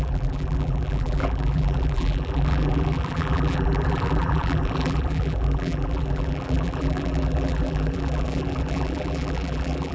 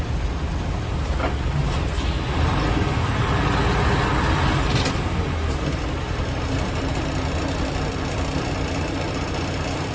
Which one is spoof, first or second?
first